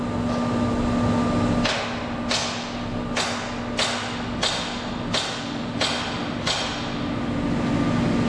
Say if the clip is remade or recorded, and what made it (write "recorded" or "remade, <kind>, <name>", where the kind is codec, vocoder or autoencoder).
recorded